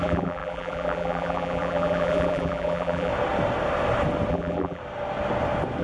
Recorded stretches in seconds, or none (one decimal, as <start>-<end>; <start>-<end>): 3.1-4.3; 4.8-5.8